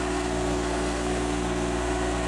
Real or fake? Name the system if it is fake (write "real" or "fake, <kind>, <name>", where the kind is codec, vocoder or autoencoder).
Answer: fake, codec, SNAC